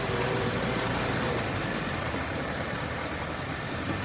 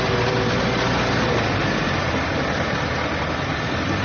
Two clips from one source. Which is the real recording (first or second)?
second